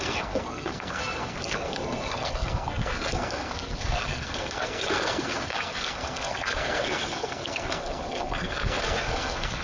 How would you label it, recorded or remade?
remade